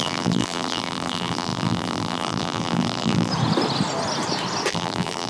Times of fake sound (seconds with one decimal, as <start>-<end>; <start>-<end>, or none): 0.0-3.3; 4.7-5.3